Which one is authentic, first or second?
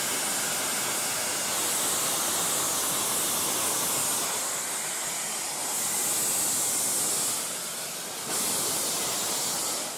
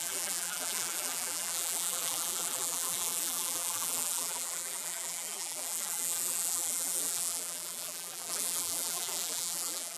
first